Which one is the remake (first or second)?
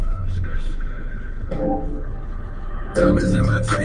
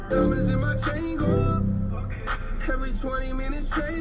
first